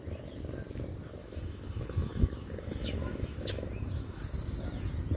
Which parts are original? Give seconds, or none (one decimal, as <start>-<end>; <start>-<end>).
0.0-1.2; 4.2-5.2